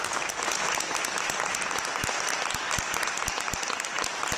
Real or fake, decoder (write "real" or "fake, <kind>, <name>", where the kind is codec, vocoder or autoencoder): real